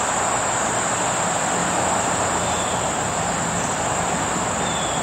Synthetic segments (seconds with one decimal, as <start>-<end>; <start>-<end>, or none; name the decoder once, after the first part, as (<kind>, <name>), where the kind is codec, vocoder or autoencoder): 1.6-4.6 (vocoder, BigVGAN v2)